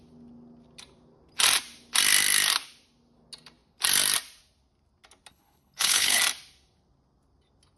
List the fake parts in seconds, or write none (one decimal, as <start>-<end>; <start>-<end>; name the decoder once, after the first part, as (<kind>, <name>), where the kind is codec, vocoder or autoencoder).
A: 5.3-6.2 (codec, HILCodec)